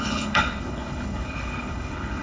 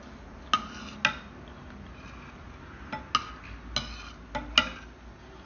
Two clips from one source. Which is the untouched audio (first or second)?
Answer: second